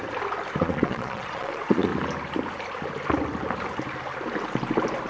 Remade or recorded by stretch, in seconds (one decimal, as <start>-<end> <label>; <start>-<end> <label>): 0.0-0.6 recorded; 0.6-1.9 remade; 1.9-5.1 recorded

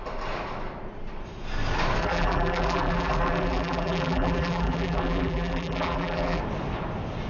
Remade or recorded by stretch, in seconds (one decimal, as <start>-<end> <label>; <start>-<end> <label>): 0.0-2.0 recorded; 2.0-6.4 remade; 6.4-7.3 recorded

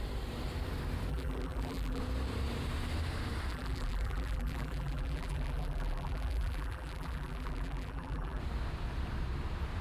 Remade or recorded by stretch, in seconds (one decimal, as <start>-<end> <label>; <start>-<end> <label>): 0.0-1.1 recorded; 1.1-2.0 remade; 2.0-3.5 recorded; 3.5-8.4 remade; 8.4-9.8 recorded

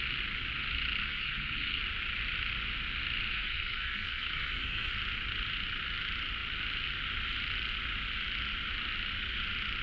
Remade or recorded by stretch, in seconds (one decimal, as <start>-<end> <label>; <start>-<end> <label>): 0.0-1.1 recorded; 1.1-1.8 remade; 1.8-3.3 recorded; 3.3-4.9 remade; 4.9-9.8 recorded

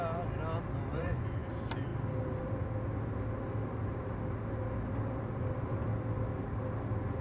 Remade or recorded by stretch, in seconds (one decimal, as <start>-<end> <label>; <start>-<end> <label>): 0.0-0.9 recorded; 0.9-1.5 remade; 1.5-7.2 recorded

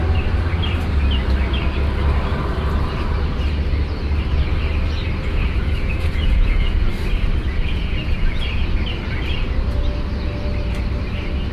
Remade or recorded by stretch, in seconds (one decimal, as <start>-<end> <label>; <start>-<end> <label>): 0.0-5.3 recorded; 5.3-6.9 remade; 6.9-7.4 recorded; 7.4-8.4 remade; 8.4-11.5 recorded

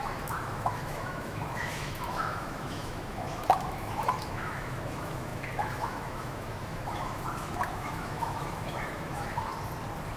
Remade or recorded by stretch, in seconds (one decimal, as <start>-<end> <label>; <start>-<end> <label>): 0.0-9.5 remade; 9.5-10.2 recorded